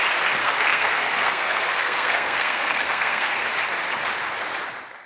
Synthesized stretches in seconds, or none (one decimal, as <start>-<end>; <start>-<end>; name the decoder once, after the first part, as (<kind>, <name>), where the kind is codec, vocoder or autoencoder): 0.4-3.5 (codec, SNAC)